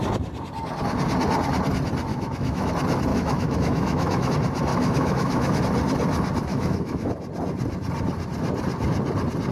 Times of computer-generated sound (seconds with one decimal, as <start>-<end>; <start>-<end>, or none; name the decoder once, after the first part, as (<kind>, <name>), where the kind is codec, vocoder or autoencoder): 2.1-2.7 (autoencoder, DAC-VAE); 3.1-4.3; 4.7-5.6; 6.5-7.1